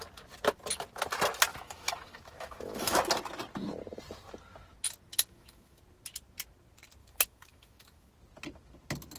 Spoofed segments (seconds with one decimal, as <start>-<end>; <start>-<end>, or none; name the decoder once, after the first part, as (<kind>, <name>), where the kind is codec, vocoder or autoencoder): 1.5-3.0 (autoencoder, DAC-VAE); 5.1-5.8; 7.0-8.1